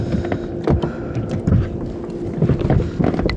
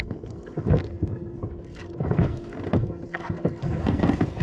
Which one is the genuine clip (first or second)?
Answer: first